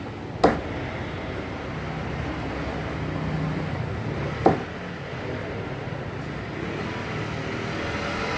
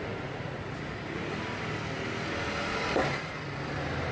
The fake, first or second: second